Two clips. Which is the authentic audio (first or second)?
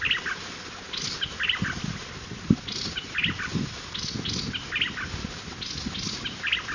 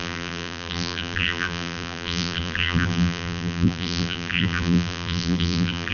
first